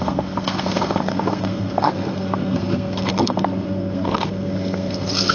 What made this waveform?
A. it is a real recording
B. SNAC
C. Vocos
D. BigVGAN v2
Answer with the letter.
B